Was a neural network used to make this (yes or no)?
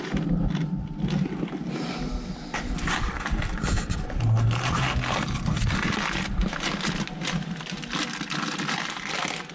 no